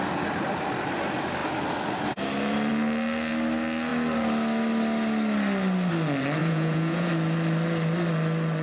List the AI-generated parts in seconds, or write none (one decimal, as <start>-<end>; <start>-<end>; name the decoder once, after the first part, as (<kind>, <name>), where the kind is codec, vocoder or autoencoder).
6.4-7.1 (vocoder, Vocos)